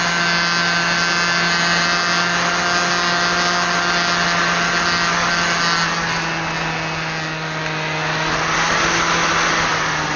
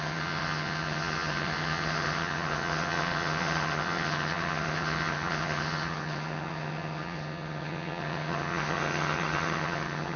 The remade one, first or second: second